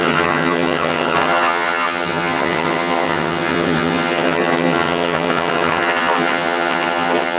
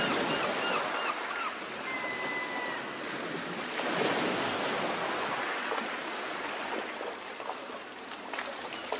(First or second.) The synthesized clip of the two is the first